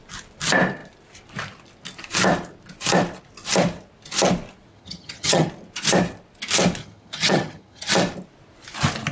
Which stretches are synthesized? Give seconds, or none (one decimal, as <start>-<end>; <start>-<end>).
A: 4.7-5.5; 6.8-7.9

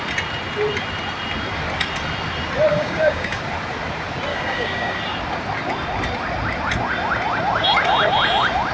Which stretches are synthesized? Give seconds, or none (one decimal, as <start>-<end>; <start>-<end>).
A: 2.7-3.4; 4.3-5.0

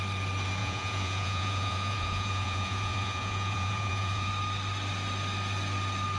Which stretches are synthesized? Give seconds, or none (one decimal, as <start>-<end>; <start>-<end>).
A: 0.6-4.3

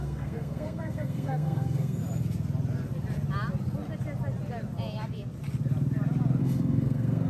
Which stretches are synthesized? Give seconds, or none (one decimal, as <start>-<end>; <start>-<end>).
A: 0.0-2.0; 6.4-7.3

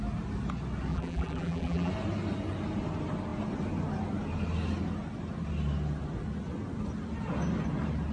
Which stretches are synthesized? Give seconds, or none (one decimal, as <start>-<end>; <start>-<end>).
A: 0.9-1.9

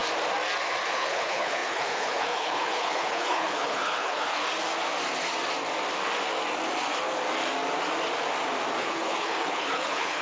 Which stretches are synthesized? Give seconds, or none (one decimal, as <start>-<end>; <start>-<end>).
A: 0.8-4.4; 8.8-10.2

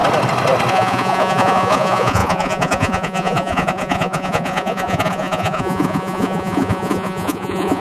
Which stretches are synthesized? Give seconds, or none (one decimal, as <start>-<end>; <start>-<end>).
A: 0.7-7.8